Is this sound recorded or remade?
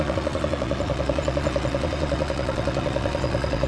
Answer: remade